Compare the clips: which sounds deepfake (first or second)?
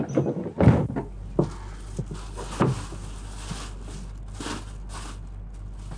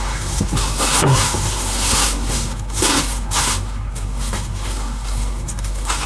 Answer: second